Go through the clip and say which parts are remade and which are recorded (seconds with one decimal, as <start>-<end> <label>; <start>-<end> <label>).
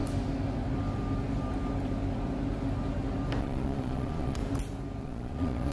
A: 0.0-3.4 recorded; 3.4-4.4 remade; 4.4-5.0 recorded; 5.0-5.7 remade